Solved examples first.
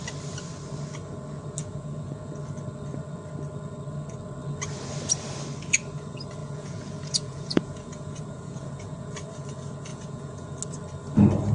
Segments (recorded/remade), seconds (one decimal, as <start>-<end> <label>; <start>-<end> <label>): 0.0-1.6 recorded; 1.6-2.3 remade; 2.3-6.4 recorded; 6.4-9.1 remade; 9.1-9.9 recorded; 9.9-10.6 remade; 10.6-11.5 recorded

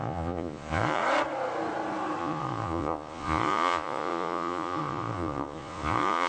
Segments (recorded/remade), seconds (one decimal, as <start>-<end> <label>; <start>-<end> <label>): 0.0-1.0 remade; 1.0-2.2 recorded; 2.2-6.3 remade

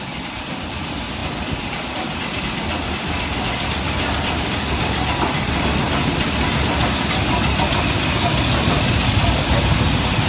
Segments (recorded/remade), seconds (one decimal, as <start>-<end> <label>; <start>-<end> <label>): 0.0-10.3 recorded

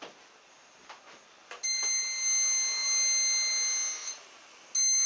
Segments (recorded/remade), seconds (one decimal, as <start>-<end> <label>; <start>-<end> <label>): 0.0-5.1 recorded

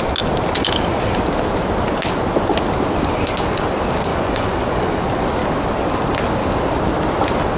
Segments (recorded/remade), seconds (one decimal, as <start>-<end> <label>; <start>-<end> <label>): 0.0-4.1 recorded; 4.1-5.0 remade; 5.0-7.6 recorded